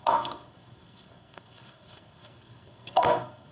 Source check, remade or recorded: remade